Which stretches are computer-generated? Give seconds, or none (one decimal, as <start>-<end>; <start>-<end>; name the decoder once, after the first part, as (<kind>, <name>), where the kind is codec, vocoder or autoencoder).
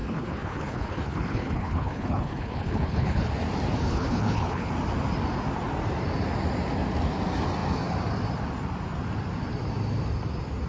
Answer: 0.0-3.3 (codec, HILCodec); 3.8-4.7